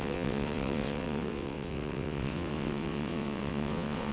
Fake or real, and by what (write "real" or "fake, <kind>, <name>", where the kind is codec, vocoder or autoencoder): fake, vocoder, WaveNeXt